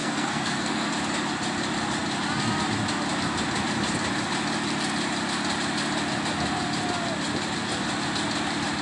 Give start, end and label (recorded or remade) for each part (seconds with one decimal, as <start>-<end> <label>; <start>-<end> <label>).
0.0-0.9 remade; 0.9-8.8 recorded